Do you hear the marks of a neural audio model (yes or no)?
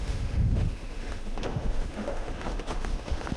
yes